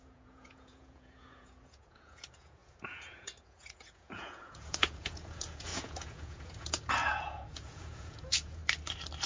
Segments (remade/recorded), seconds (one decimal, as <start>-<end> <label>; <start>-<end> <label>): 0.0-8.6 remade; 8.6-9.3 recorded